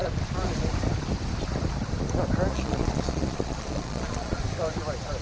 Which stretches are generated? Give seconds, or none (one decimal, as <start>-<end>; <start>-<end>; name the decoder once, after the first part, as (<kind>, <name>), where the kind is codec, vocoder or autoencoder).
2.5-4.4 (vocoder, Vocos)